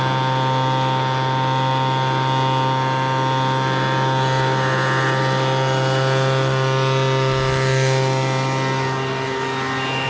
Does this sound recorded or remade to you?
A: recorded